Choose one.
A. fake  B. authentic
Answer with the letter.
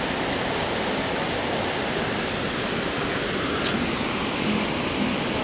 B